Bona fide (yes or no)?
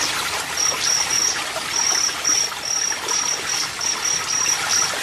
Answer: yes